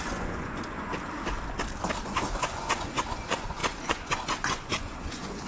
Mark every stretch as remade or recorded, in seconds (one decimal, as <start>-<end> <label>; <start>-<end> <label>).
0.0-0.9 remade; 0.9-2.0 recorded; 2.0-5.5 remade